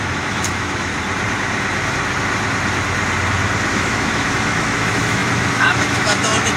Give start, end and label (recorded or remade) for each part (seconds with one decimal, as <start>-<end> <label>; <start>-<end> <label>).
0.0-0.9 remade; 0.9-3.7 recorded; 3.7-6.6 remade